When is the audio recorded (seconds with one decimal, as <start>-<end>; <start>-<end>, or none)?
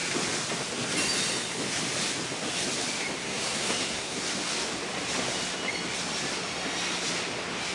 0.0-3.2; 4.3-7.7